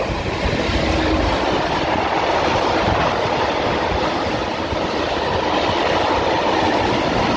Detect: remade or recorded recorded